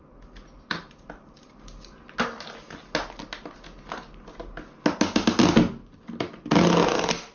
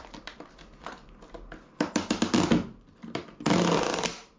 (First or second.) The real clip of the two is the first